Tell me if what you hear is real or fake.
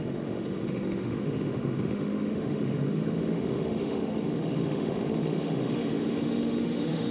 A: fake